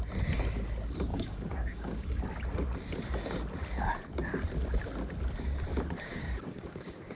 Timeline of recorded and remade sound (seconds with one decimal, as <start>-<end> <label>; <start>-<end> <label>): 0.0-1.1 recorded; 1.1-2.2 remade; 2.2-6.1 recorded; 6.1-7.2 remade